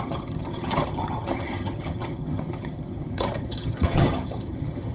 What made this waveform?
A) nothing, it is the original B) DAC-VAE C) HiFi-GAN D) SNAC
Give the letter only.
C